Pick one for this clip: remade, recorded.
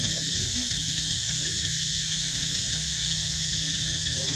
remade